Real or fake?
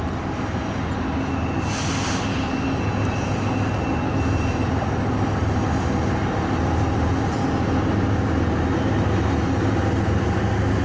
real